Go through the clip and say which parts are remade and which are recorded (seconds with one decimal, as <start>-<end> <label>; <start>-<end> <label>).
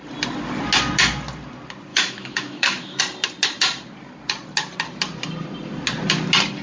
0.0-1.9 recorded; 1.9-3.0 remade; 3.0-6.6 recorded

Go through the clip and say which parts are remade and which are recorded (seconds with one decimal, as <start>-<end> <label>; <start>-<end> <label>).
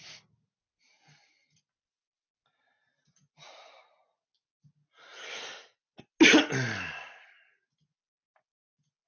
0.0-9.1 recorded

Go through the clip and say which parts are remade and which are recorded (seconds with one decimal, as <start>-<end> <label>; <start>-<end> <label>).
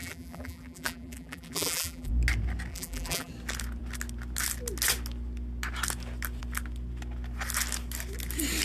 0.0-2.1 remade; 2.1-2.7 recorded; 2.7-3.3 remade; 3.3-8.6 recorded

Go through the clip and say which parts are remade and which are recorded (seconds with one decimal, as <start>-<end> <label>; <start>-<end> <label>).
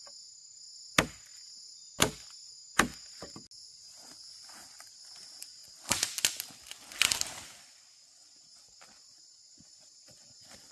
0.0-3.8 recorded; 3.8-4.9 remade; 4.9-5.6 recorded; 5.6-7.8 remade; 7.8-10.7 recorded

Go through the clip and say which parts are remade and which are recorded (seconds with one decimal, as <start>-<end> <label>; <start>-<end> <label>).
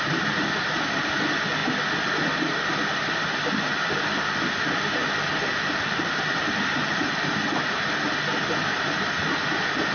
0.0-9.9 recorded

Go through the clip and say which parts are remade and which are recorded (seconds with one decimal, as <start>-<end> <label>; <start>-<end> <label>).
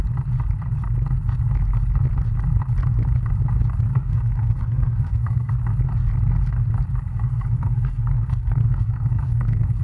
0.0-3.9 recorded; 3.9-5.5 remade; 5.5-7.1 recorded; 7.1-9.8 remade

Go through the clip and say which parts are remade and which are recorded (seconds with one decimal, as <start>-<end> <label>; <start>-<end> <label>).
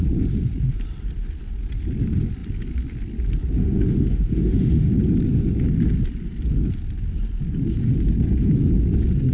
0.0-3.6 recorded; 3.6-4.9 remade; 4.9-9.3 recorded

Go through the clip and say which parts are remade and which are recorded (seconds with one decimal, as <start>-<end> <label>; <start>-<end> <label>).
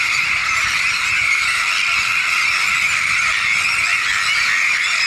0.0-1.6 remade; 1.6-5.1 recorded